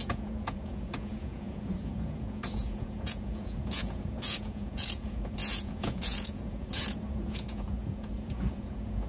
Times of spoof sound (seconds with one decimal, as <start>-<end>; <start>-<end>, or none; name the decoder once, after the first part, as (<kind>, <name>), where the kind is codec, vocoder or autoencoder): 0.0-9.1 (vocoder, Vocos)